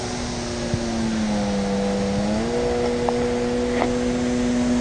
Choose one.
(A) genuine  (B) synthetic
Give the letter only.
A